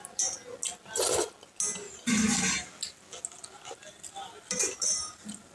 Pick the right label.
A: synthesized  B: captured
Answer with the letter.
B